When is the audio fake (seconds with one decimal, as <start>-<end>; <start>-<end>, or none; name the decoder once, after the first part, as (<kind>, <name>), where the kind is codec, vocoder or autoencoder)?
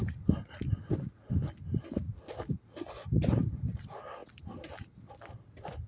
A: none